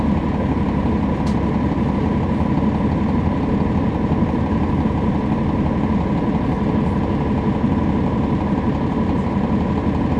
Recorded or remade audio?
recorded